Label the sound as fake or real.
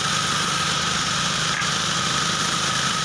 real